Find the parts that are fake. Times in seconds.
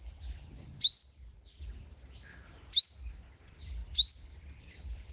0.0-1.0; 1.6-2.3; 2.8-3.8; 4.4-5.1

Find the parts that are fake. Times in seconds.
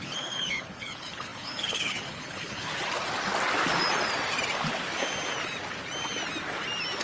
0.0-2.7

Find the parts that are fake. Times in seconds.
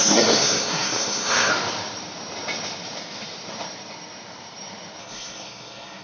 0.0-1.5; 5.0-6.0